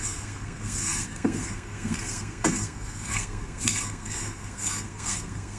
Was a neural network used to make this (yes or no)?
yes